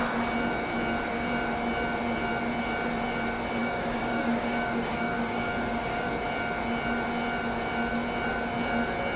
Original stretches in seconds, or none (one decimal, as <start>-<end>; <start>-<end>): 0.0-3.6; 6.1-9.2